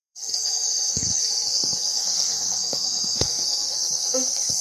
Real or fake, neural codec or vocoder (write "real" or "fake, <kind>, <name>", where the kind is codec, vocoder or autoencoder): fake, codec, SNAC